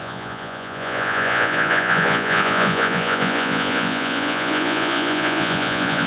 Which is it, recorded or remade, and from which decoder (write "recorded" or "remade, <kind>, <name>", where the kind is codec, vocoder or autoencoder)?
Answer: remade, vocoder, Vocos